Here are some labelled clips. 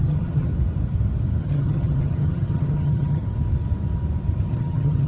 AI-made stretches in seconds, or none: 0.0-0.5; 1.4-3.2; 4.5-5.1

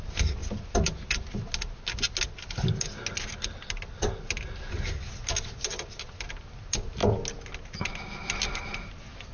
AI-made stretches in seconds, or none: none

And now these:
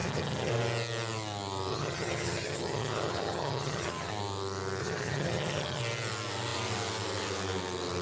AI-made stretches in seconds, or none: 0.0-0.5; 1.7-4.1; 4.8-5.8

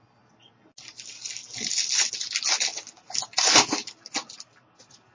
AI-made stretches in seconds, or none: none

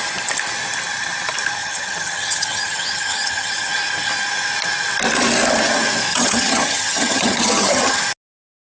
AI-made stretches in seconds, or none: 1.6-3.7; 6.1-8.0